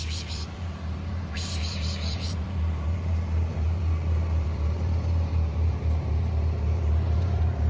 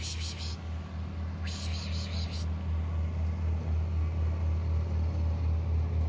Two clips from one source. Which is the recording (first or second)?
second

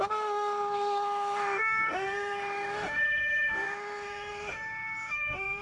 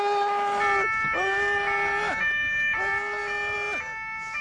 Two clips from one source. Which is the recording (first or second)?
second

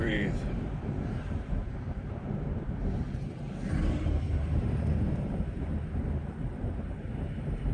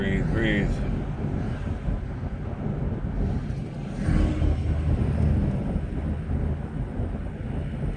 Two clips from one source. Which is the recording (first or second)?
second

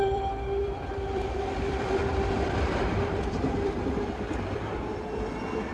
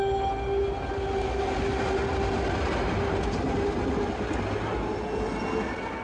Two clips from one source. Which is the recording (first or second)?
second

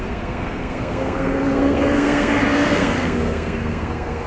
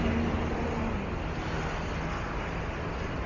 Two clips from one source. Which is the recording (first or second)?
second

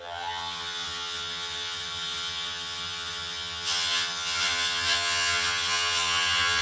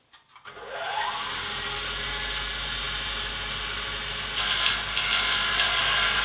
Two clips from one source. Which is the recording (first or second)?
second